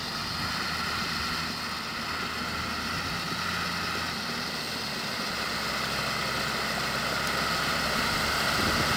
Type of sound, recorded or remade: recorded